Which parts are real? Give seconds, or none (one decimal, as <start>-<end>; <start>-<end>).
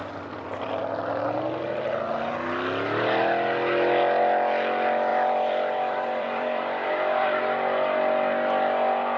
0.8-5.1; 7.4-9.2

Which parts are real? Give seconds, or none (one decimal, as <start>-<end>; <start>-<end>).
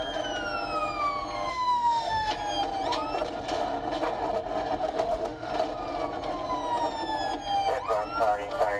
0.0-1.5; 2.3-4.8; 5.5-8.8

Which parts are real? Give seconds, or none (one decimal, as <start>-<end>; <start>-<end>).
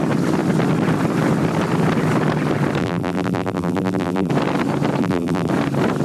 0.0-2.8; 4.3-5.0; 5.5-6.0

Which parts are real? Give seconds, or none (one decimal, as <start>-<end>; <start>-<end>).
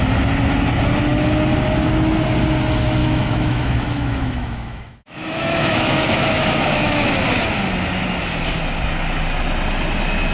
0.0-3.0; 7.1-10.3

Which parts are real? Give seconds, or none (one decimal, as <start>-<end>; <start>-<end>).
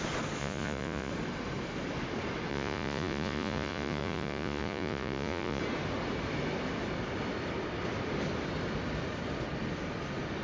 0.0-0.4; 1.1-2.5; 5.6-10.4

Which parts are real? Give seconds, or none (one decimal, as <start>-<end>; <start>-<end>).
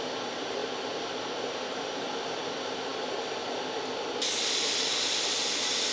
0.0-5.9